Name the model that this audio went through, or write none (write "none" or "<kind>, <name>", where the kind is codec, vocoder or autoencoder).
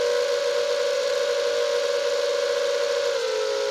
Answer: none